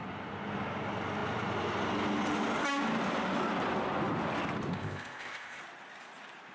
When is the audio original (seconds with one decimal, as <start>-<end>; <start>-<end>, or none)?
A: 0.0-4.7; 5.6-6.5